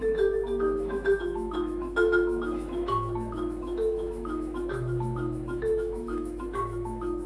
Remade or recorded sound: remade